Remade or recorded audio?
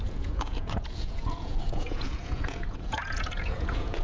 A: remade